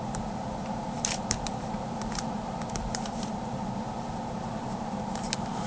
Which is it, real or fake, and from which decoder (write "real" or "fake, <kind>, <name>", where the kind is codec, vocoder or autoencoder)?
fake, vocoder, BigVGAN v2